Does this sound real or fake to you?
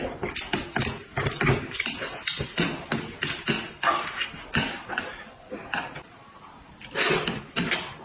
real